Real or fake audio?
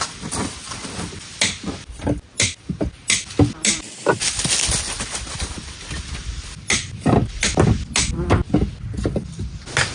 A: real